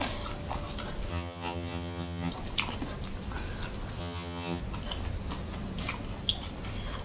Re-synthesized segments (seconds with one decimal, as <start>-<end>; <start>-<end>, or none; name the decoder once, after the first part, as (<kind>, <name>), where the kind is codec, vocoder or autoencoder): 1.1-2.3 (vocoder, HiFi-GAN); 4.0-4.6